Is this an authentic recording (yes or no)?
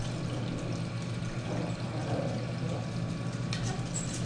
yes